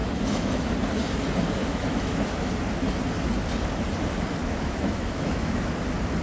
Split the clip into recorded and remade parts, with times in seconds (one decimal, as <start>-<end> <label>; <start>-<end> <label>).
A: 0.0-0.7 remade; 0.7-1.6 recorded; 1.6-2.5 remade; 2.5-4.4 recorded; 4.4-5.7 remade; 5.7-6.2 recorded